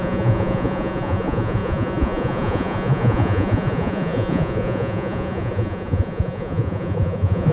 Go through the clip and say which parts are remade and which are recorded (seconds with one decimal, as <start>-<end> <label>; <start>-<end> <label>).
0.0-7.5 remade